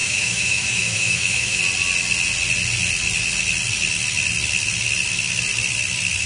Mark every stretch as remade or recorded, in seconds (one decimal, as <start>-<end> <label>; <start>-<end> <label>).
0.0-1.6 remade; 1.6-6.3 recorded